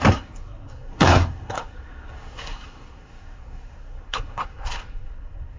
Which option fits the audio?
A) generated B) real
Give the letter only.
A